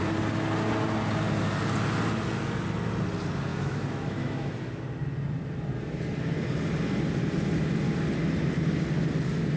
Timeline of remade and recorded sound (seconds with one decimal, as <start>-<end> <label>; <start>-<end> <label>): 0.0-3.5 recorded; 3.5-4.5 remade; 4.5-9.6 recorded